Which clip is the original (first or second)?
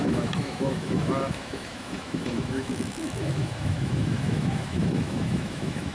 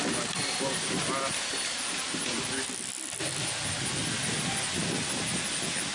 second